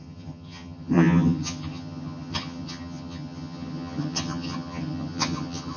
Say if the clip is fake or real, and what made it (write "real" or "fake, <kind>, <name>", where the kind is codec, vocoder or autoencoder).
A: fake, vocoder, HiFi-GAN